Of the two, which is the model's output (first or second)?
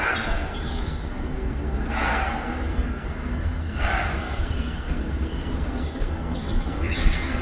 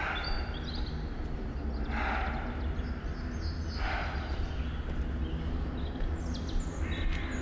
first